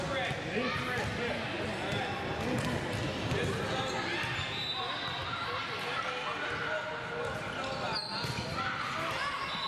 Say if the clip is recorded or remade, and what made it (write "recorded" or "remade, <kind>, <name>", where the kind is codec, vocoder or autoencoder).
recorded